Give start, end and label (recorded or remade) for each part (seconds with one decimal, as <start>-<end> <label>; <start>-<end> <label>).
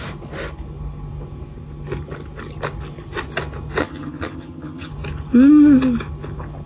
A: 0.0-3.8 recorded; 3.8-4.9 remade; 4.9-6.7 recorded